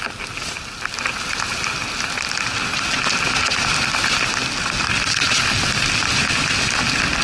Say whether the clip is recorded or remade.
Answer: recorded